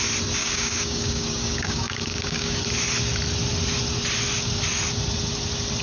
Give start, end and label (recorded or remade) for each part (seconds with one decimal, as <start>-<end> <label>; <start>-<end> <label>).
0.0-0.4 recorded; 0.4-2.6 remade; 2.6-5.8 recorded